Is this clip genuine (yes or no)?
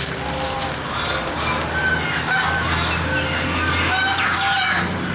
yes